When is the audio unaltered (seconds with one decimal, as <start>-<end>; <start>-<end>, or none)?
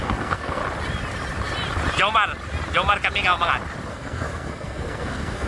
0.6-3.9